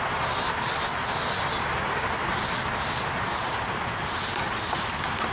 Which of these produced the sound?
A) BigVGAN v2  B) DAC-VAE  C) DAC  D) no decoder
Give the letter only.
D